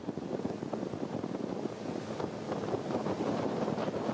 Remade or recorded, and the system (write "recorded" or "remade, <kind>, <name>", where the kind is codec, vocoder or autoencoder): recorded